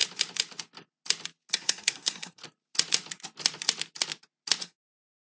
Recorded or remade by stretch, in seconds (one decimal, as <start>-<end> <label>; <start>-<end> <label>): 0.0-1.5 recorded; 1.5-2.4 remade; 2.4-4.6 recorded; 4.6-5.2 remade